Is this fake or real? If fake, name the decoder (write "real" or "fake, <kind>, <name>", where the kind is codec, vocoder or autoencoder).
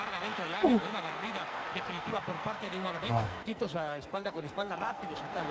fake, codec, SNAC